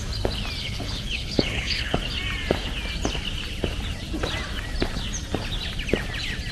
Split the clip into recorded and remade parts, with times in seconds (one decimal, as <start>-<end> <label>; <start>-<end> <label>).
0.0-0.6 recorded; 0.6-2.0 remade; 2.0-6.5 recorded